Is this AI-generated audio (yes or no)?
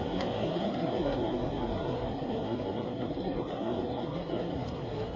yes